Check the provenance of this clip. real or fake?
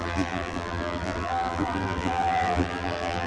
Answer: fake